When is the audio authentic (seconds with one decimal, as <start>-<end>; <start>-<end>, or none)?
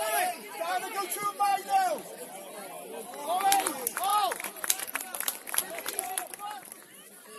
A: 1.5-3.6